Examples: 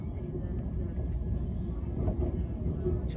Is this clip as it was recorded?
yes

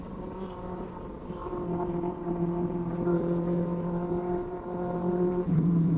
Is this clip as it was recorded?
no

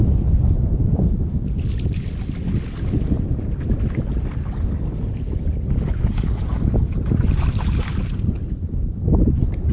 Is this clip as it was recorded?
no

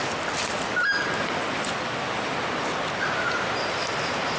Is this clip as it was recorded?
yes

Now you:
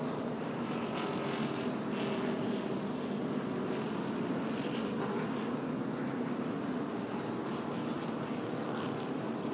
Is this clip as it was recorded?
yes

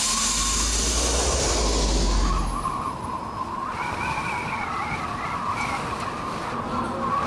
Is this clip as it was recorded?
yes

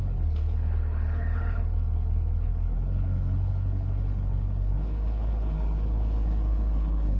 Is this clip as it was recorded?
no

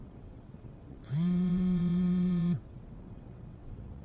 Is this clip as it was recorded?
no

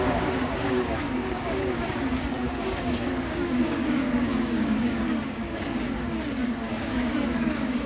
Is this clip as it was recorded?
no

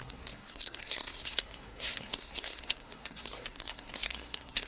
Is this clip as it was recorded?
no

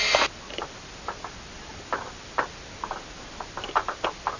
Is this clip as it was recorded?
yes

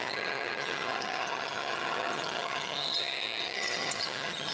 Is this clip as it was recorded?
no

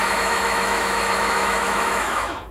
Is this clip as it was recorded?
no